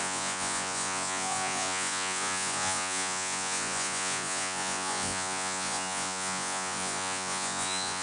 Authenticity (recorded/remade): remade